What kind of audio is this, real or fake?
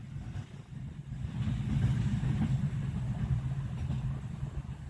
real